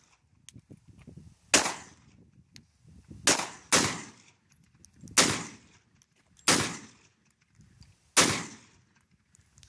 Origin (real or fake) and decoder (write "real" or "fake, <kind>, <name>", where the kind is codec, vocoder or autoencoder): real